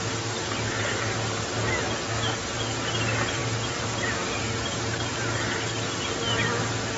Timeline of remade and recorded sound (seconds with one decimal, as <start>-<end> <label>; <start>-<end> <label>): 0.0-7.0 recorded